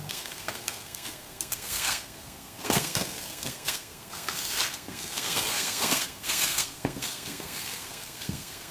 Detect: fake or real fake